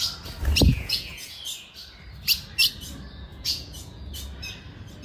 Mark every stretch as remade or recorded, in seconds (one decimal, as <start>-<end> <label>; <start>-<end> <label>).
0.0-0.7 recorded; 0.7-1.4 remade; 1.4-3.3 recorded; 3.3-4.1 remade; 4.1-5.0 recorded